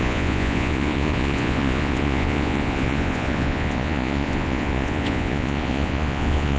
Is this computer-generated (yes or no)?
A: yes